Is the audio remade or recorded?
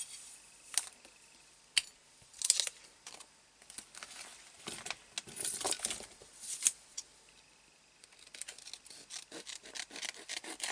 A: recorded